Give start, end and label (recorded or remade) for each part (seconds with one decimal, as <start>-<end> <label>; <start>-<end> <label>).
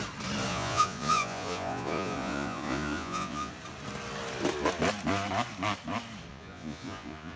0.0-0.5 recorded; 0.5-3.5 remade; 3.5-6.3 recorded; 6.3-7.4 remade